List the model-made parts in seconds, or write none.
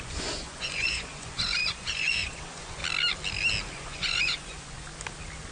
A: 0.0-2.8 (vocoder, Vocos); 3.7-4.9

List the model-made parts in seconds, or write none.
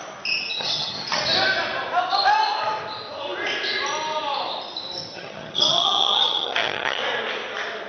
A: 0.5-1.2 (vocoder, HiFi-GAN); 5.1-7.0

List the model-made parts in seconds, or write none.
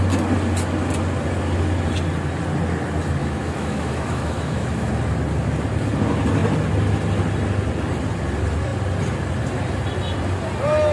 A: 3.2-4.9 (autoencoder, DAC-VAE)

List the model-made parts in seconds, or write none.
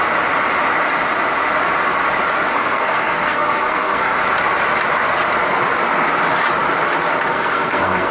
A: 2.5-4.2 (codec, SNAC); 7.3-8.1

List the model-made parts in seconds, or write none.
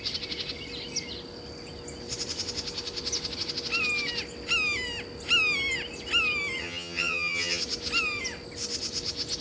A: 6.6-7.6 (vocoder, HiFi-GAN)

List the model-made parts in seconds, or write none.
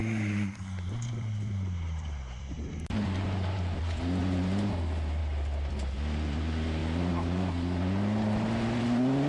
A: 0.0-3.8 (vocoder, BigVGAN v2); 4.2-4.7; 6.8-7.5